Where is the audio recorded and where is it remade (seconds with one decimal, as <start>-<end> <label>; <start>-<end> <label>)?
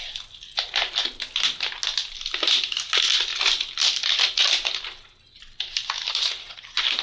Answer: 0.0-7.0 recorded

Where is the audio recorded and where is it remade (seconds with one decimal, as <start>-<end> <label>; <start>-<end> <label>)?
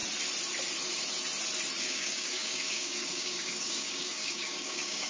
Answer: 0.0-1.8 recorded; 1.8-5.1 remade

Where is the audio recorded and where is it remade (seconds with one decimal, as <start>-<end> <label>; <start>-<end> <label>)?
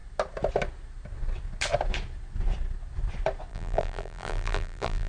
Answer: 0.0-3.5 recorded; 3.5-5.1 remade